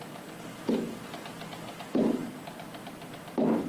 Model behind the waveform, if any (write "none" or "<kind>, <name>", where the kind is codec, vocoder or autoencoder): none